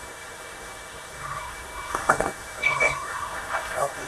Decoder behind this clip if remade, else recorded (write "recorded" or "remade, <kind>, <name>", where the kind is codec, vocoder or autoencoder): remade, codec, SNAC